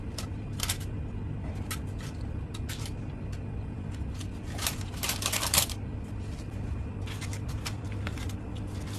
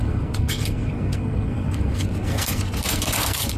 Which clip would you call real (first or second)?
first